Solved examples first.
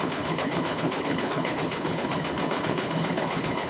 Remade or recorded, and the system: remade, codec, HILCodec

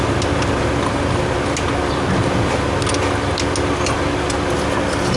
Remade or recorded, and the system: recorded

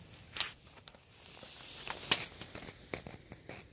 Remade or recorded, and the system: recorded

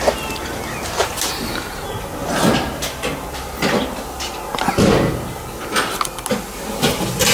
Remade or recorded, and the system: recorded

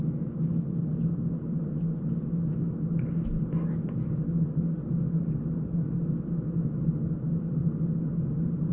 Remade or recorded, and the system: recorded